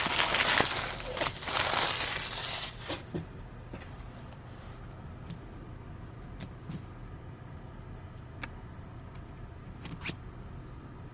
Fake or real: real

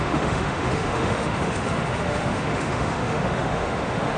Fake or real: fake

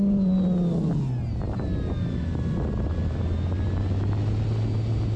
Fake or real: real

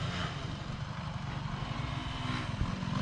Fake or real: real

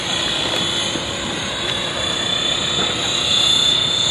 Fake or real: real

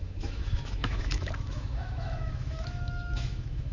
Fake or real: fake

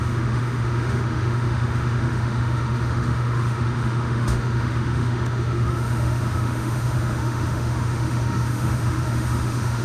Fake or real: fake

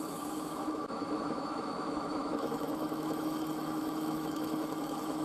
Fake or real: fake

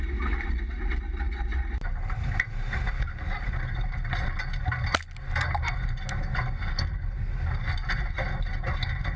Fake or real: real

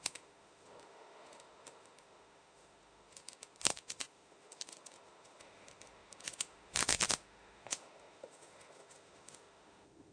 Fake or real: fake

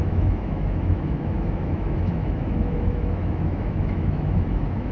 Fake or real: fake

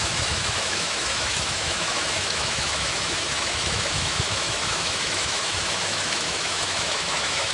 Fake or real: fake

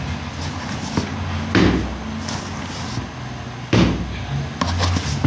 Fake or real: real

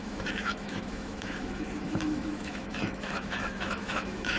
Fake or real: fake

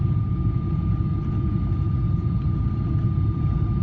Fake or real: real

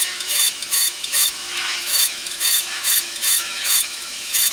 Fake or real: fake